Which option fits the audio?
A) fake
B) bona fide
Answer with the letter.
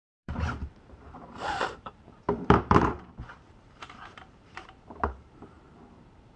A